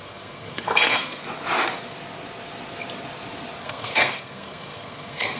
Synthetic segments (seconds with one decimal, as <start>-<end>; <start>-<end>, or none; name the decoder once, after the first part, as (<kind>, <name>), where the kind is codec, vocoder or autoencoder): 0.0-1.2 (codec, SNAC); 3.6-5.4